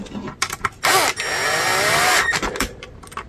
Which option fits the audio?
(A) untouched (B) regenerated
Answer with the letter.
A